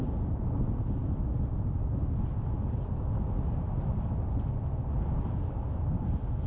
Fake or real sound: real